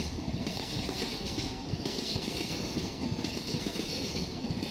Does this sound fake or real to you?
fake